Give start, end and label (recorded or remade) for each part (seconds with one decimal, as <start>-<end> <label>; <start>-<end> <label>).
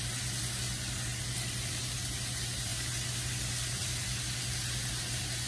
0.0-1.1 recorded; 1.1-1.8 remade; 1.8-5.5 recorded